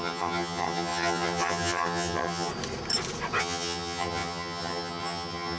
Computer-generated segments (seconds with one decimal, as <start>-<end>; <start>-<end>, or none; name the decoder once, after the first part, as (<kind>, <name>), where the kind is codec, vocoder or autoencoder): 0.0-2.5 (vocoder, HiFi-GAN); 3.4-5.6